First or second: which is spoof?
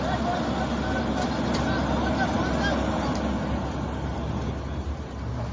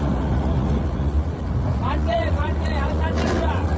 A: second